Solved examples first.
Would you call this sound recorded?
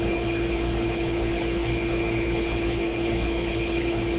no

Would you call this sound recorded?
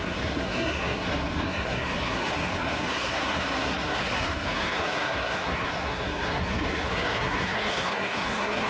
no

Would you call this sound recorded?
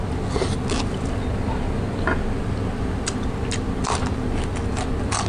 yes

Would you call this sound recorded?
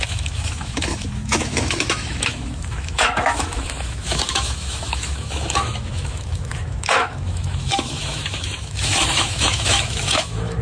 no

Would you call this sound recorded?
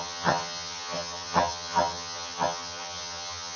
no